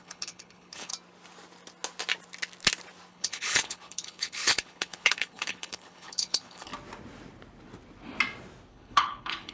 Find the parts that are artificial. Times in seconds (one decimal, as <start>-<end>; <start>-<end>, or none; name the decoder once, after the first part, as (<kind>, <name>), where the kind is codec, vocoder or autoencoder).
0.0-0.9 (codec, HILCodec); 3.1-6.7; 8.7-9.5